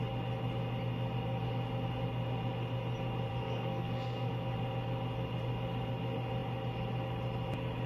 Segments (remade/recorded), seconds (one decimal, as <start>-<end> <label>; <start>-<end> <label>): 0.0-3.3 recorded; 3.3-4.3 remade; 4.3-7.9 recorded